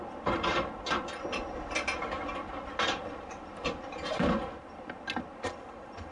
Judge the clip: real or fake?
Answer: real